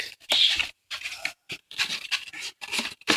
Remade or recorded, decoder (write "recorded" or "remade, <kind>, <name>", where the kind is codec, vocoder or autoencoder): remade, vocoder, BigVGAN v2